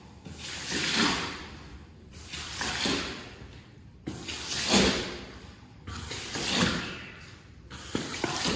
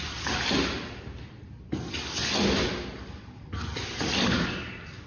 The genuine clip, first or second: second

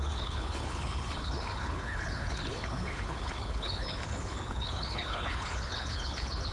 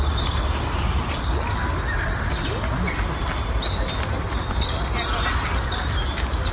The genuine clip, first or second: second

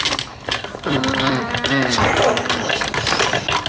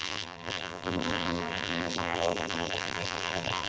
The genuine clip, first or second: first